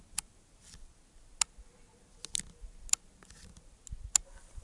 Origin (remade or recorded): recorded